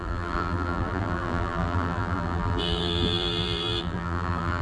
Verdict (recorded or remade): remade